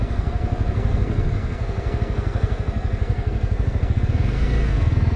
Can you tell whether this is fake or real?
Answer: fake